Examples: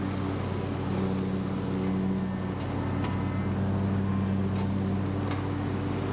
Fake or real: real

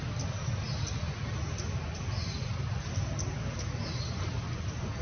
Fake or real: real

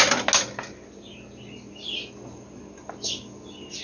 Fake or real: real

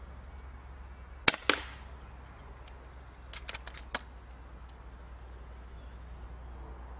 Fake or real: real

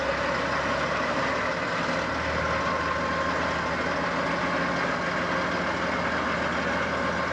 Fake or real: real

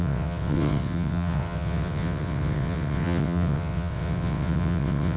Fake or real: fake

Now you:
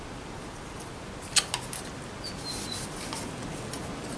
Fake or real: real